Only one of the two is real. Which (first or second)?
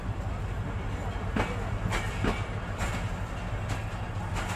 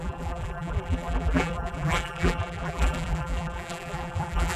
first